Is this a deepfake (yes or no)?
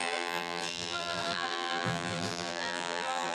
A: yes